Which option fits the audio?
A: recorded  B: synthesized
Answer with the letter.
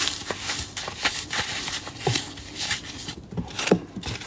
A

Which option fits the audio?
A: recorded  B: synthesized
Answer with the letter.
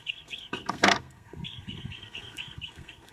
B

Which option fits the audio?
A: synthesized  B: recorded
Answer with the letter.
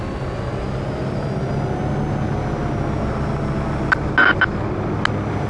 B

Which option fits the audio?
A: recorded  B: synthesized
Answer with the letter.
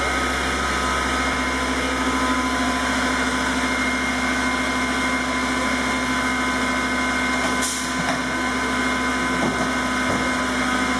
A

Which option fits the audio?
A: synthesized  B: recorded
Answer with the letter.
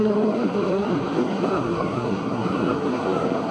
A